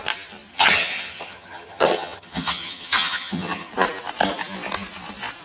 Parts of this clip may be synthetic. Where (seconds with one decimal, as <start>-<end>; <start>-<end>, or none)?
0.5-3.7